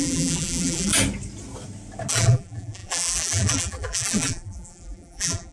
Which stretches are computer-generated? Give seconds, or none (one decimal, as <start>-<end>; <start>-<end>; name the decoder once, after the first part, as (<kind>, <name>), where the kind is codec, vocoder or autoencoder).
0.0-0.9 (vocoder, BigVGAN v2); 2.1-5.5